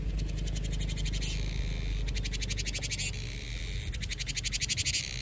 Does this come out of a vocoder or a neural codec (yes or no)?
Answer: no